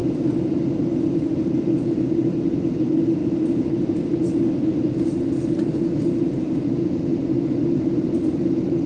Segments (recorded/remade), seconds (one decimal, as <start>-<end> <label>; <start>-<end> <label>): 0.0-8.9 recorded